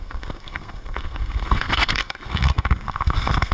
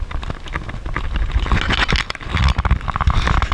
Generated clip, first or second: first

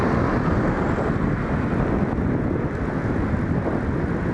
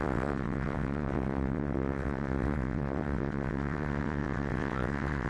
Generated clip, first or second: second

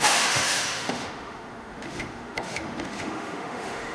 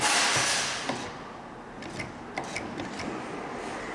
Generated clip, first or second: first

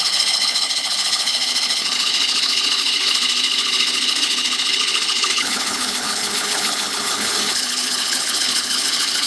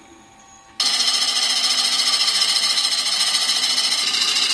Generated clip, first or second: first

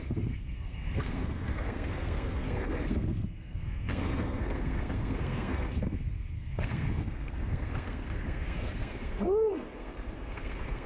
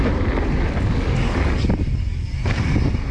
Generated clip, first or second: first